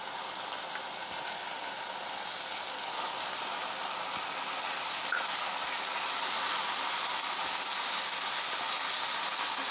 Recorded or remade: recorded